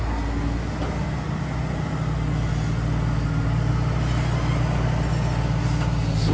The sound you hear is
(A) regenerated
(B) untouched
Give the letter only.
B